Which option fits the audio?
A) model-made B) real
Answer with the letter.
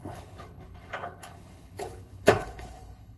A